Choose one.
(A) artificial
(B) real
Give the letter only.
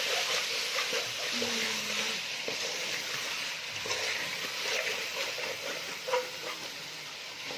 A